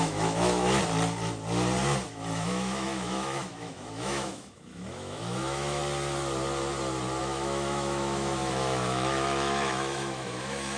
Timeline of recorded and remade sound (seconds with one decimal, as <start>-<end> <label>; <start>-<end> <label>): 0.0-0.8 remade; 0.8-2.1 recorded; 2.1-5.8 remade; 5.8-7.2 recorded; 7.2-10.8 remade